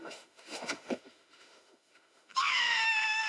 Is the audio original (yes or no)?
no